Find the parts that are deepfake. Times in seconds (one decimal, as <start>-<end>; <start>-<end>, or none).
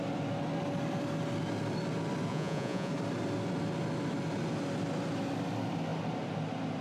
2.3-2.9